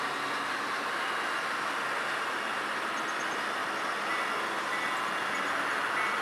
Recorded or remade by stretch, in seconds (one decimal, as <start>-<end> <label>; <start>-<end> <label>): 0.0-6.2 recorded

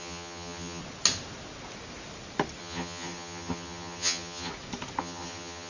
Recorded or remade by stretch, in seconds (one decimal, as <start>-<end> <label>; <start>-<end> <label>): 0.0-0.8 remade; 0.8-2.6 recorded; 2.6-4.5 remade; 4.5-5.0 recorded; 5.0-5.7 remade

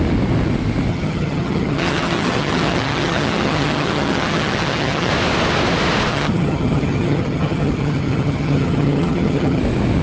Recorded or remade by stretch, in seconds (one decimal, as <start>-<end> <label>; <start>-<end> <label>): 0.0-0.9 recorded; 0.9-5.1 remade; 5.1-6.1 recorded; 6.1-9.6 remade; 9.6-10.0 recorded

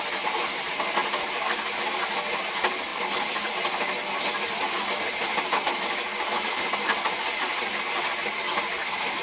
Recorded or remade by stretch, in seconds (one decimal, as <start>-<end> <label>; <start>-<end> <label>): 0.0-9.2 recorded

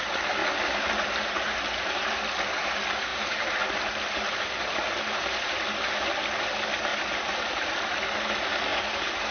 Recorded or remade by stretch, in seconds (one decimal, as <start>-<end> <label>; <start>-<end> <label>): 0.0-0.4 recorded; 0.4-2.1 remade; 2.1-3.1 recorded; 3.1-3.9 remade; 3.9-6.9 recorded; 6.9-7.6 remade; 7.6-8.7 recorded; 8.7-9.3 remade